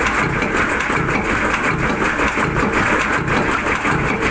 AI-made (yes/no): no